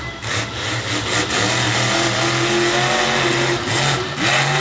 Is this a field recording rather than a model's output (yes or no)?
yes